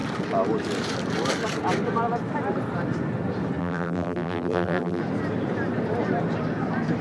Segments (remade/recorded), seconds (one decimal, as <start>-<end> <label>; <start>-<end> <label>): 0.0-3.6 recorded; 3.6-5.0 remade; 5.0-7.0 recorded